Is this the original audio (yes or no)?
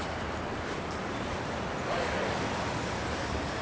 yes